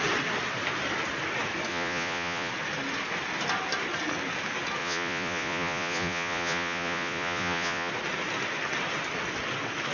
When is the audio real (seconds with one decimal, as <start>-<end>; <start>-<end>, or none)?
0.0-1.7; 2.5-4.8; 7.9-9.9